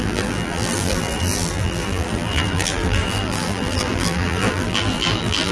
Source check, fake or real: fake